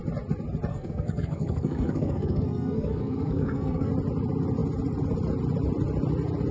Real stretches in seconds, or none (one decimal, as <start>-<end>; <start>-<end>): 0.0-0.7; 3.9-6.5